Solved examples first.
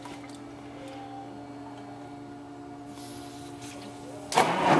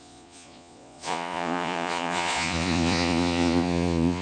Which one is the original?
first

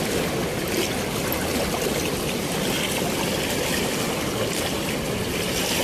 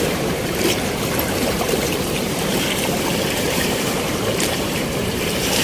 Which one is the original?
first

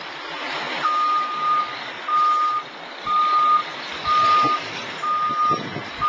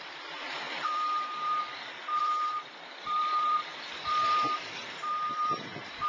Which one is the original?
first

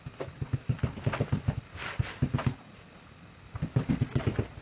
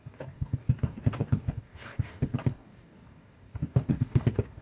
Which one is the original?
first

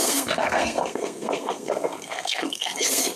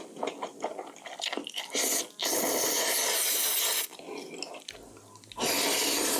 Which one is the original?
second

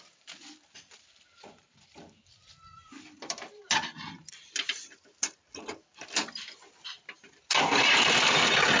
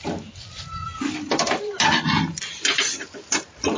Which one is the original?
second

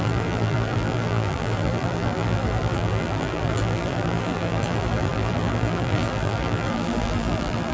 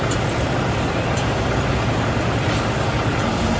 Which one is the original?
second